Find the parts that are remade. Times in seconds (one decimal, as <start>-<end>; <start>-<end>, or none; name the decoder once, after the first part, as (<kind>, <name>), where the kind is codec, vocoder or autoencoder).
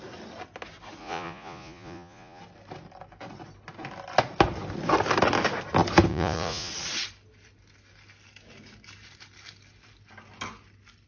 1.0-2.4 (vocoder, Vocos); 6.1-6.7